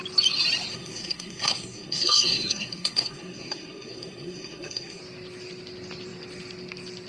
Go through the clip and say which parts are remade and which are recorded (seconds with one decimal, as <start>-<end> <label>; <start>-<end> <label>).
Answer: 0.0-0.7 recorded; 0.7-5.0 remade; 5.0-7.1 recorded